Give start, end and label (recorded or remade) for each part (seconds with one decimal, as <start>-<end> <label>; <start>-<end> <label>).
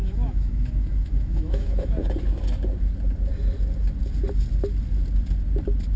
0.0-1.9 remade; 1.9-6.0 recorded